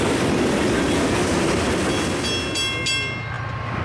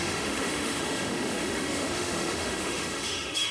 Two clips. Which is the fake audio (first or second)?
second